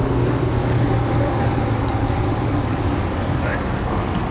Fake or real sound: fake